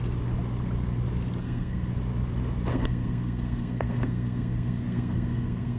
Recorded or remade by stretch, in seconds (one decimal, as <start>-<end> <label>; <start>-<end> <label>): 0.0-1.4 recorded; 1.4-1.9 remade; 1.9-2.7 recorded; 2.7-5.8 remade